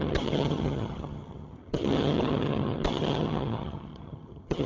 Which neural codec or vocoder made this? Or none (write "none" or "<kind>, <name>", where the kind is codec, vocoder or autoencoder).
vocoder, HiFi-GAN